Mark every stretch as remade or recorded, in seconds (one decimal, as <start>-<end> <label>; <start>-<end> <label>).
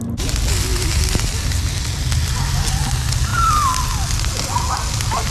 0.0-5.3 recorded